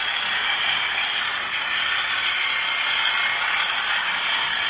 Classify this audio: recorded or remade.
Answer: recorded